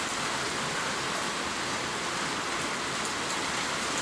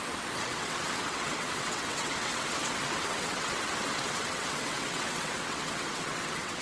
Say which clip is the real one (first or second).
first